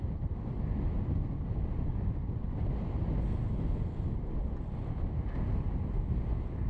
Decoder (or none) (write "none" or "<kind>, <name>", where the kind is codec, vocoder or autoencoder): none